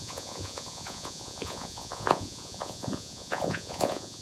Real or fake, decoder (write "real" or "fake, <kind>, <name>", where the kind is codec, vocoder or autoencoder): fake, vocoder, Vocos